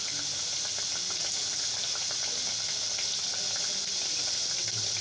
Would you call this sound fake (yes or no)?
no